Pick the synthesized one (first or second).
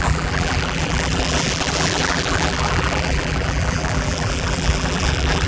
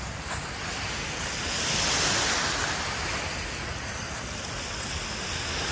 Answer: first